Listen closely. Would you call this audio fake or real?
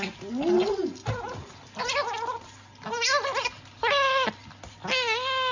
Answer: real